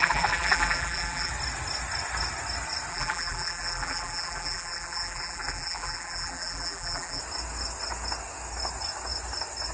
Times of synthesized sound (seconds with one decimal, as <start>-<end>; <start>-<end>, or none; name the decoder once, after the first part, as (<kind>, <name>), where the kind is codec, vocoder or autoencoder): 0.0-1.3 (vocoder, BigVGAN v2); 2.9-7.2